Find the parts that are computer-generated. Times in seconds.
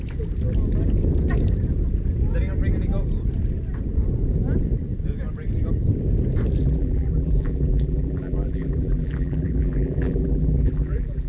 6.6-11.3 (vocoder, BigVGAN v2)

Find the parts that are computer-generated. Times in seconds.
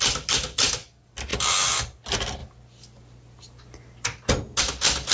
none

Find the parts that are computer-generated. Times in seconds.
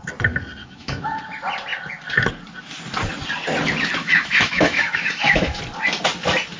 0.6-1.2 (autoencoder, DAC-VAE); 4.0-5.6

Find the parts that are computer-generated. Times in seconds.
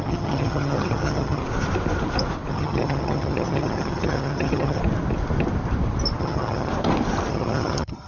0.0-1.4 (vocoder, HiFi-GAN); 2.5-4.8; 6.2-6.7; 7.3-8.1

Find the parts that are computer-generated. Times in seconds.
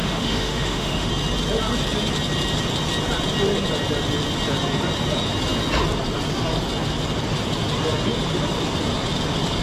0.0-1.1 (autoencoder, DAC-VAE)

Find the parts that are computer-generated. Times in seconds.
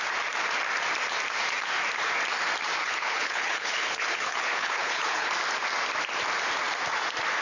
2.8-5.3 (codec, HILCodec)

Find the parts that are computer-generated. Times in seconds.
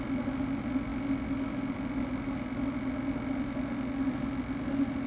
none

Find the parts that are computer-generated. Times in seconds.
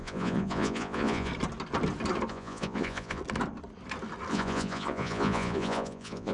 0.0-1.3 (vocoder, Vocos); 2.3-3.2; 4.3-6.3